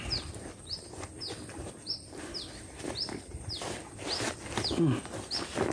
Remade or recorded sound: recorded